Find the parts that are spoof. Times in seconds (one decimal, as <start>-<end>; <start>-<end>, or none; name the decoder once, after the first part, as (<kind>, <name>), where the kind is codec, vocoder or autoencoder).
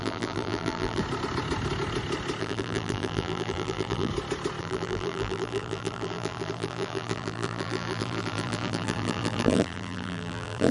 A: 0.0-1.0 (vocoder, BigVGAN v2); 2.4-4.1; 4.6-10.7